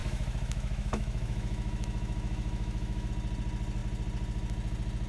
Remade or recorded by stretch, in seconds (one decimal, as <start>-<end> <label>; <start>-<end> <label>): 0.0-3.1 remade; 3.1-5.1 recorded